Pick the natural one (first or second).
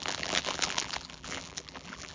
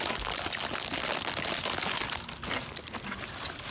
second